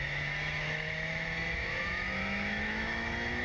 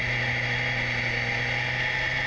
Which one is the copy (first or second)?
first